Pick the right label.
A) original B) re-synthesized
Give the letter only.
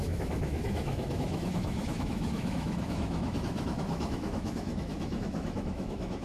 B